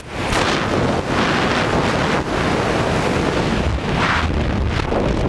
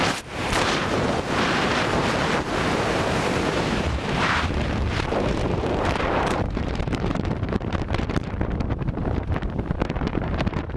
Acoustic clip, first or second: first